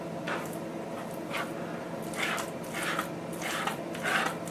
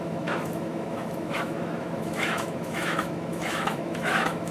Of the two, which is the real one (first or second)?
first